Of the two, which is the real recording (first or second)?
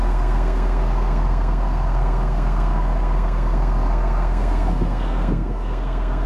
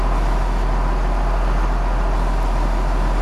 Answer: second